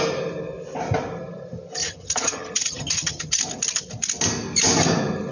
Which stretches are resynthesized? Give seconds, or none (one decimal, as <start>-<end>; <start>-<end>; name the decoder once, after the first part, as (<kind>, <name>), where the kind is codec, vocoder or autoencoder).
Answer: 1.8-3.4 (vocoder, HiFi-GAN)